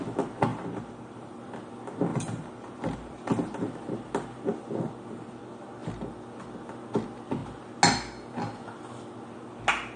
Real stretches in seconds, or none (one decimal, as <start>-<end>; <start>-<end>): 0.0-0.5; 1.5-2.1; 3.7-10.0